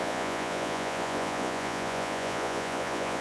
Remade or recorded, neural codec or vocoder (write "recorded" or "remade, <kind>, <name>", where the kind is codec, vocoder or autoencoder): remade, vocoder, Vocos